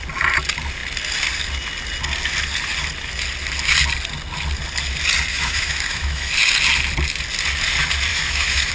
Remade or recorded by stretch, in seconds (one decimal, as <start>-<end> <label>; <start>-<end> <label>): 0.0-5.3 recorded; 5.3-6.3 remade; 6.3-8.1 recorded; 8.1-8.7 remade